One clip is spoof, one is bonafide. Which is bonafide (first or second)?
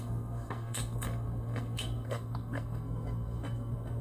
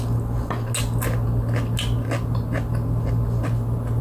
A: second